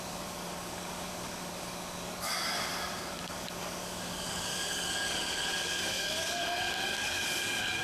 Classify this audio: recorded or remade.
remade